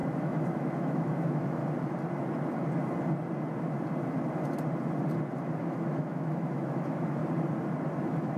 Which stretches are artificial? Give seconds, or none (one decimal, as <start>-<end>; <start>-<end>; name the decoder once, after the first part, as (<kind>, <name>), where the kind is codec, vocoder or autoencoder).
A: 0.0-1.6 (autoencoder, DAC-VAE); 5.6-7.2; 8.0-8.4